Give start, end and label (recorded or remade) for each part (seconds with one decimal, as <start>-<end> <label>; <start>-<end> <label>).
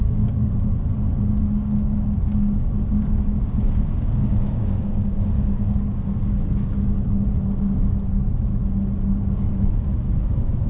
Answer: 0.0-8.5 remade; 8.5-9.7 recorded; 9.7-10.7 remade